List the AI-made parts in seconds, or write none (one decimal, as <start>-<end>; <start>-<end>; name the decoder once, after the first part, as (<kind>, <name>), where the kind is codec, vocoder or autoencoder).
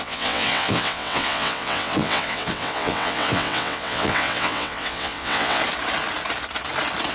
0.0-5.6 (vocoder, WaveNeXt)